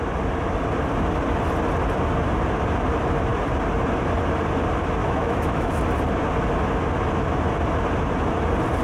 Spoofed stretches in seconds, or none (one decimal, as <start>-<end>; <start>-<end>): 5.0-5.8